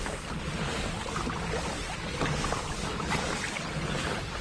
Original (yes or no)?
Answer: yes